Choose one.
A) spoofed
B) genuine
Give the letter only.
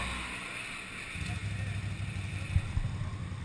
B